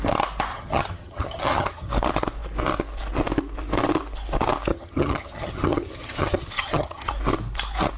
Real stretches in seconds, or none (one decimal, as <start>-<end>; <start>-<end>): 0.0-0.5; 1.9-4.7; 7.1-8.0